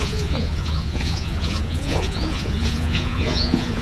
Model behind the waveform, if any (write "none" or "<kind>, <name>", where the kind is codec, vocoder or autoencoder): vocoder, Vocos